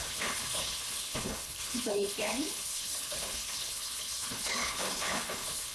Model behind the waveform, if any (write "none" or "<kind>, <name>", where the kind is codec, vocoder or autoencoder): codec, HILCodec